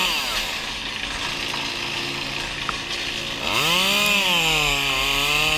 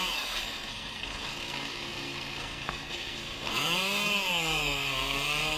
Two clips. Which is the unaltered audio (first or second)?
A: first